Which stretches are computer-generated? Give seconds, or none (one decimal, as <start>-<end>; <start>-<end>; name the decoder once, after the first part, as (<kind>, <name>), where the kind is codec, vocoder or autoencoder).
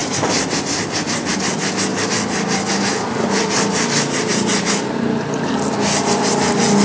0.0-0.6 (vocoder, BigVGAN v2)